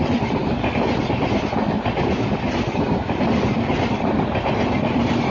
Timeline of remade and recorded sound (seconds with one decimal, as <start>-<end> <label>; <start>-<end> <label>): 0.0-5.3 recorded